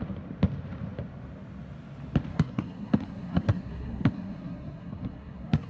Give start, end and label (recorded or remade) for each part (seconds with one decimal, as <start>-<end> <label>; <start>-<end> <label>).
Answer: 0.0-2.3 recorded; 2.3-5.7 remade